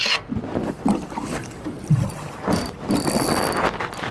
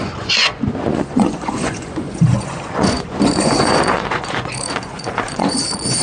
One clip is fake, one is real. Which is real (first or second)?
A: first